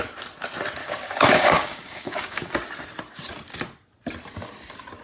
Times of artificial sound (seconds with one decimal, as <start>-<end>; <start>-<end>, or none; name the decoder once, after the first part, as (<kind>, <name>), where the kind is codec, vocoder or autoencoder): 0.8-2.5 (codec, DAC)